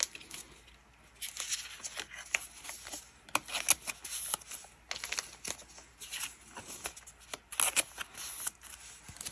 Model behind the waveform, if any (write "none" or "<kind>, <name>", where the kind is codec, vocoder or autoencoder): none